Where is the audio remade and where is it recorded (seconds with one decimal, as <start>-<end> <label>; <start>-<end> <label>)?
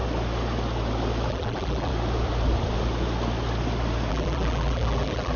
0.0-1.3 recorded; 1.3-1.9 remade; 1.9-4.1 recorded; 4.1-5.4 remade